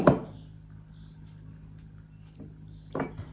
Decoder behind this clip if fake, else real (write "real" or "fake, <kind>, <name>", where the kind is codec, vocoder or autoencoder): real